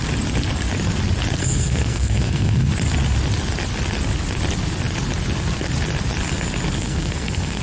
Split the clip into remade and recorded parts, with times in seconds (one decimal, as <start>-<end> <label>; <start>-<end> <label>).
0.0-1.4 recorded; 1.4-2.7 remade; 2.7-6.8 recorded; 6.8-7.6 remade